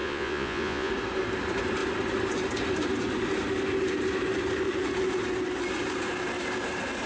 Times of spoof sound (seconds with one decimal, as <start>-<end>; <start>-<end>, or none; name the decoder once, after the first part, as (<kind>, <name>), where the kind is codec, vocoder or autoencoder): 0.0-0.9 (vocoder, Vocos)